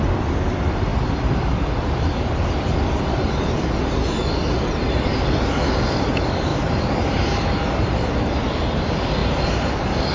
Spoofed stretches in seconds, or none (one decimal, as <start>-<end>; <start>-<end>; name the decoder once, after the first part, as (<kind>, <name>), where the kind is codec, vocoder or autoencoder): 6.5-7.6 (vocoder, BigVGAN v2); 9.2-10.1